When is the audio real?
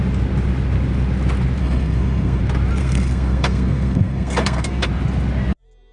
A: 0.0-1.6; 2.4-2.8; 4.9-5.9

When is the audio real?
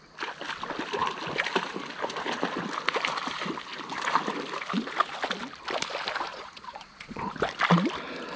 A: 0.0-6.3; 7.3-8.4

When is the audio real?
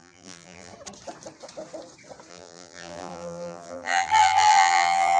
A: 0.7-2.3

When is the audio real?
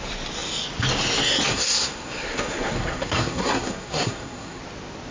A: 0.0-1.5; 4.6-5.1